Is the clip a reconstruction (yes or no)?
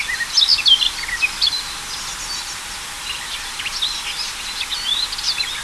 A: no